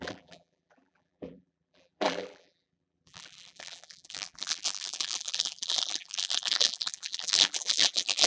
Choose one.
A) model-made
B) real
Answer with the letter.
A